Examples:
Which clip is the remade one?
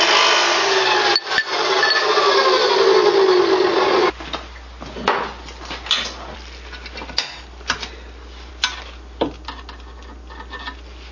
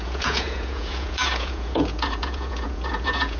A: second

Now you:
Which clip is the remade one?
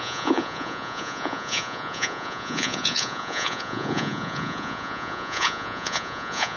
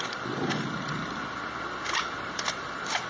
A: first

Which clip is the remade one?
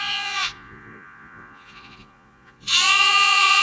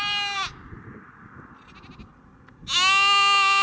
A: first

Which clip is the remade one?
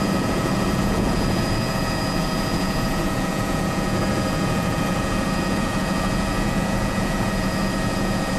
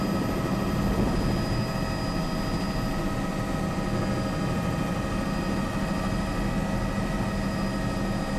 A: first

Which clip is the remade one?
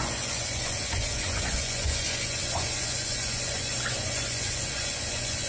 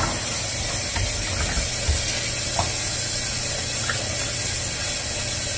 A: first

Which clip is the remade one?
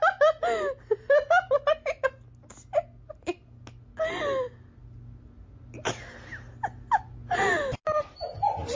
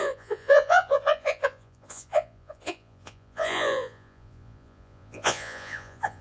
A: second